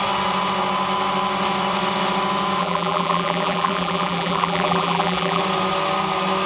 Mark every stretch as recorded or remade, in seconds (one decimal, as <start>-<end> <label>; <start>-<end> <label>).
0.0-2.6 recorded; 2.6-5.4 remade; 5.4-6.5 recorded